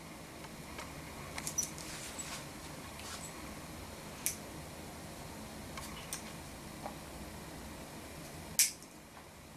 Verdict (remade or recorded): recorded